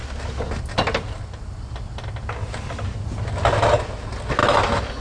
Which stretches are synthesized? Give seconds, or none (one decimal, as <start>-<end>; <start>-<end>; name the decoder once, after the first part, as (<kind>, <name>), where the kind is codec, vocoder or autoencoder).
none